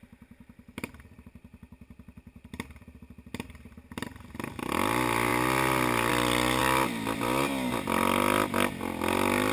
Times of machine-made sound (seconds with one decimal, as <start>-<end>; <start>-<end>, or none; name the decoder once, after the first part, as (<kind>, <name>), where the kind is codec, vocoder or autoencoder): none